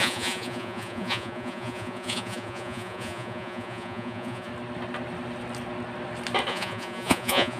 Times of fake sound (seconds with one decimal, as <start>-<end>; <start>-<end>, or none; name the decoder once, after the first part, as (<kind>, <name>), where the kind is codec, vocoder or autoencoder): 0.0-4.5 (vocoder, Vocos); 6.5-7.6